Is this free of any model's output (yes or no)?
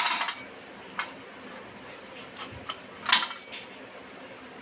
yes